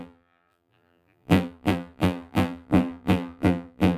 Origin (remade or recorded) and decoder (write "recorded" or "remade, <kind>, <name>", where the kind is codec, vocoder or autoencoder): remade, vocoder, BigVGAN v2